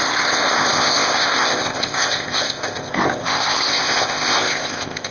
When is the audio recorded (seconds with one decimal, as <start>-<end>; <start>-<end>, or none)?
none